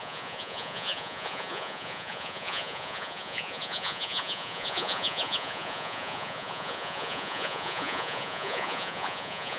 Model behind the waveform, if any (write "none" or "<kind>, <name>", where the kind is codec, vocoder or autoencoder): vocoder, Vocos